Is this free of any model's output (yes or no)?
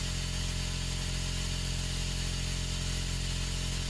yes